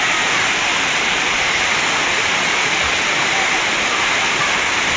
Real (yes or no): no